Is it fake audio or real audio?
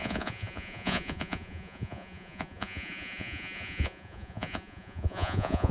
fake